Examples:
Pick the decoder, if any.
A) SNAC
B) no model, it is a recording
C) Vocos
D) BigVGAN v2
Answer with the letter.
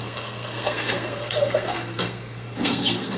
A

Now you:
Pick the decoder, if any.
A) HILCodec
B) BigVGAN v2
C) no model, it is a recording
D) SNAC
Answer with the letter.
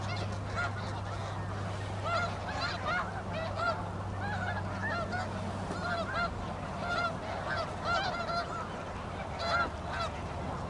C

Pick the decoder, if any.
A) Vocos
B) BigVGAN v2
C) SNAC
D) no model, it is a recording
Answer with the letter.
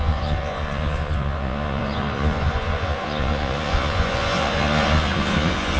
A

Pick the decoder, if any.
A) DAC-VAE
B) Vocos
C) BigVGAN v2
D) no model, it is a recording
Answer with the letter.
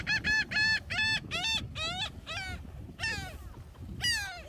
D